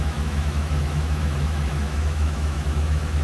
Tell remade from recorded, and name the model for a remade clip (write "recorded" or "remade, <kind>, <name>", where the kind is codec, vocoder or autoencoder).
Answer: remade, autoencoder, DAC-VAE